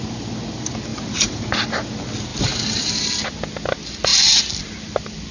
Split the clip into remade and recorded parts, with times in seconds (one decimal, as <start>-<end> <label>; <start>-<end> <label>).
0.0-0.9 recorded; 0.9-1.7 remade; 1.7-2.3 recorded; 2.3-3.1 remade; 3.1-5.3 recorded